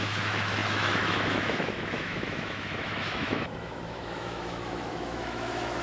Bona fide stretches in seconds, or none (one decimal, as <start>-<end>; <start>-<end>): none